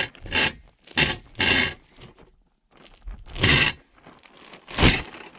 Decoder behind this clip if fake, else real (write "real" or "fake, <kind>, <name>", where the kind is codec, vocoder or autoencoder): real